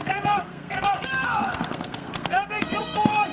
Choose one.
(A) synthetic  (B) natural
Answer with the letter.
A